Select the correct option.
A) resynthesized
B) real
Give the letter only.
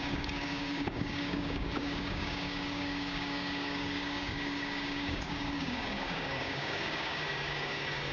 A